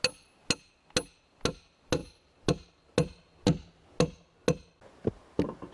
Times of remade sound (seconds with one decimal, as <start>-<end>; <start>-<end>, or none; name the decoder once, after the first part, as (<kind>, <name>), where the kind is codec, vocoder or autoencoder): none